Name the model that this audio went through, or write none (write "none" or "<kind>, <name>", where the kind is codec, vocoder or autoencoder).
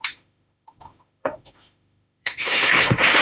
autoencoder, DAC-VAE